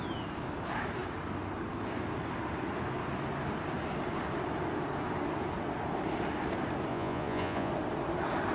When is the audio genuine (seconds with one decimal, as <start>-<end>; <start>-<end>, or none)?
0.0-6.9; 7.7-8.5